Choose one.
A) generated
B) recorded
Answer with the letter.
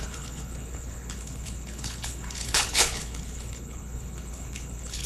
A